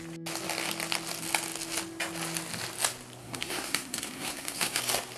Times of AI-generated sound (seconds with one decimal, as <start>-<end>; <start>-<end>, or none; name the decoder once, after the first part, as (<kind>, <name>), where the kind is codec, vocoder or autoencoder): 3.2-4.8 (codec, SNAC)